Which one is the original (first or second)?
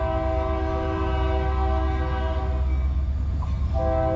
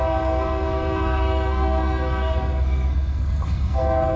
first